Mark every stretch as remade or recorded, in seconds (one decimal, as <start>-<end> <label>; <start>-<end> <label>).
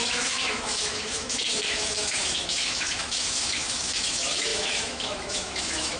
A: 0.0-6.0 remade